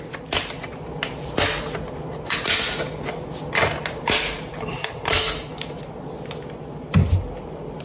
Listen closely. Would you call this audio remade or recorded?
recorded